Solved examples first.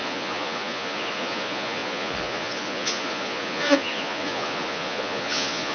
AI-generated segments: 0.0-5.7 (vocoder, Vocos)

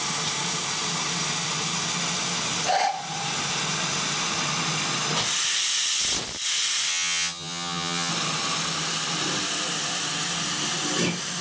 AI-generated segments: 6.9-8.1 (vocoder, HiFi-GAN)

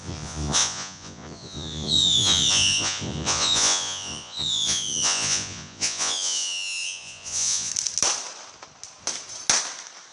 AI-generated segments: 0.0-7.7 (vocoder, Vocos)

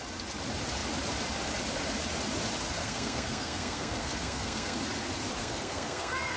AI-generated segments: 2.8-4.8 (codec, SNAC); 5.4-6.4